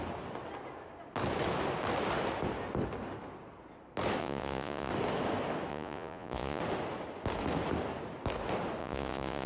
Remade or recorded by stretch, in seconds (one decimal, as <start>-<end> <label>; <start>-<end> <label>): 0.0-4.2 recorded; 4.2-4.9 remade; 4.9-5.7 recorded; 5.7-6.6 remade; 6.6-8.8 recorded; 8.8-9.5 remade

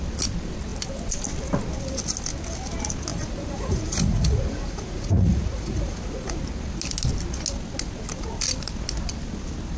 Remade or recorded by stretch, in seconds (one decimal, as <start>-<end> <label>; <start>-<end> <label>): 0.0-3.1 recorded; 3.1-6.4 remade; 6.4-9.8 recorded

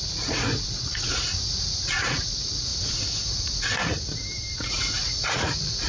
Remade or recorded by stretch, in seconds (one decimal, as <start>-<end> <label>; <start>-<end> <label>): 0.0-2.7 remade; 2.7-3.3 recorded; 3.3-3.8 remade; 3.8-4.7 recorded; 4.7-5.9 remade

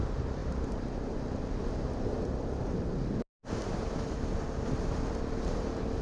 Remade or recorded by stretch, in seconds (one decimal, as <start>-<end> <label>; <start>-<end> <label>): 0.0-6.0 recorded

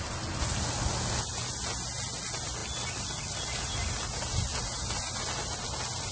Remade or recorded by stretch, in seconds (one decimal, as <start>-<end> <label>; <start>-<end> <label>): 0.0-6.1 recorded

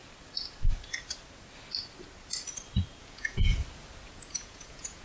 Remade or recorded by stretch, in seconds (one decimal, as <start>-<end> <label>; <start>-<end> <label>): 0.0-3.0 recorded; 3.0-3.5 remade; 3.5-4.1 recorded; 4.1-5.0 remade

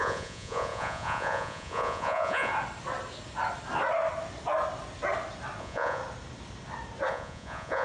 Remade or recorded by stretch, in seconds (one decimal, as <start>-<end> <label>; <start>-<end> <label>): 0.0-2.5 remade; 2.5-5.6 recorded; 5.6-6.0 remade; 6.0-7.1 recorded; 7.1-7.8 remade

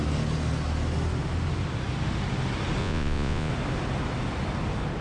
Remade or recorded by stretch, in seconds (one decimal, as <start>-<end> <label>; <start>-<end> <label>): 0.0-2.8 recorded; 2.8-3.5 remade; 3.5-5.0 recorded